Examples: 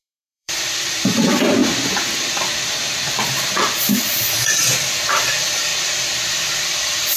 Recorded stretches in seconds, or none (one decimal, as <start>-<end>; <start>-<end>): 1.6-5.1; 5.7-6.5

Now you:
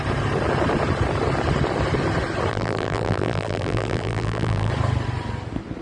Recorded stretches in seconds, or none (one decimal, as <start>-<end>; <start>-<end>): 0.0-2.5; 4.7-5.8

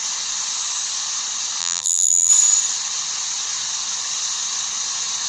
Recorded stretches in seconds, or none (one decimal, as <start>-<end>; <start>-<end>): 0.0-1.6; 2.3-5.3